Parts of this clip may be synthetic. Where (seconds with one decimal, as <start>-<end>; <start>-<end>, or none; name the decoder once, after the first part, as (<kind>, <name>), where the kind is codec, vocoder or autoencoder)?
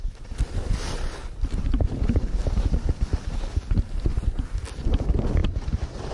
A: none